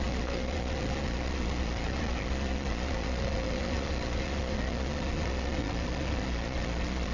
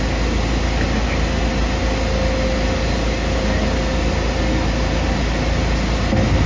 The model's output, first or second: first